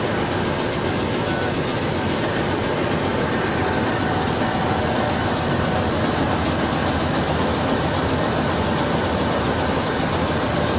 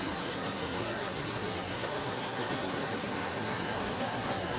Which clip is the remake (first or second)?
second